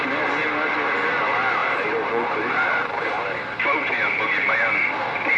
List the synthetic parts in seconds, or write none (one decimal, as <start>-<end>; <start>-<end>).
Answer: 1.6-4.2